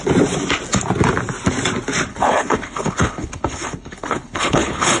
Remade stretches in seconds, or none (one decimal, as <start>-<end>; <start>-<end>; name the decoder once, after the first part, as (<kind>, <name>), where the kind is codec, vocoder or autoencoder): 2.1-5.0 (codec, HILCodec)